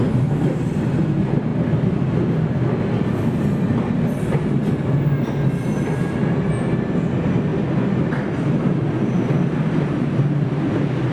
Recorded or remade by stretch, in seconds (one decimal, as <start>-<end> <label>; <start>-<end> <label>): 0.0-11.1 recorded